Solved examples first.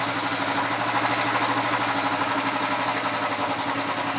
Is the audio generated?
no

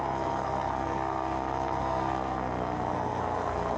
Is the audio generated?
yes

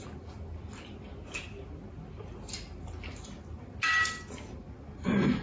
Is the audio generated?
no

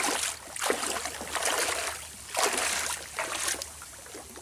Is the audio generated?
no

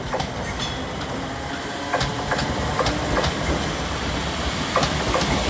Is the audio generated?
no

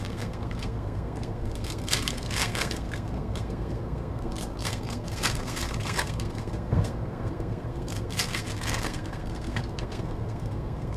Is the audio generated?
yes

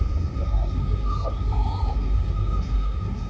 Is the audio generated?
yes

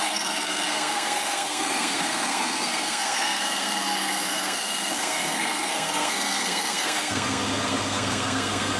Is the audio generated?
yes